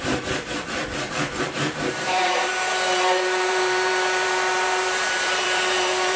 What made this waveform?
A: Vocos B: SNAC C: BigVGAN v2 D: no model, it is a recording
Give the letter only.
C